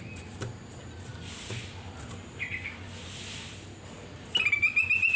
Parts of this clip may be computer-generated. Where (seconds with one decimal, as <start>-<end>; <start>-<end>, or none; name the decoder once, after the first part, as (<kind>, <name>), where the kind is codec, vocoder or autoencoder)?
none